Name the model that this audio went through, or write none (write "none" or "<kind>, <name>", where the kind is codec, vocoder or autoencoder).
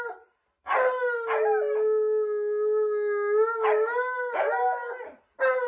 none